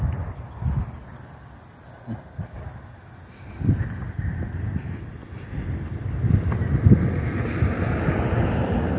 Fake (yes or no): no